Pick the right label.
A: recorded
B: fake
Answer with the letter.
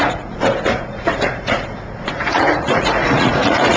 B